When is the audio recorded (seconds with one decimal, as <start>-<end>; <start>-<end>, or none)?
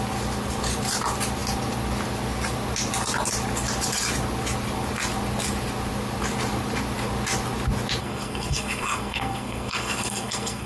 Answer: 0.0-8.0